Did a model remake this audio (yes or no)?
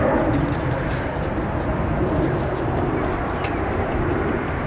no